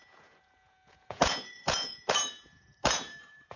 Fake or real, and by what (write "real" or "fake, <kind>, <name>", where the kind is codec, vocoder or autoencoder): fake, vocoder, Vocos